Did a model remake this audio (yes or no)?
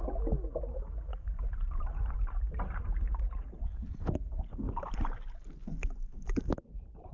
no